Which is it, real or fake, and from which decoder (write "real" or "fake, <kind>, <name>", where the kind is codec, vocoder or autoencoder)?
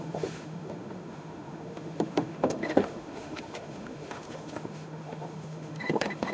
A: fake, autoencoder, DAC-VAE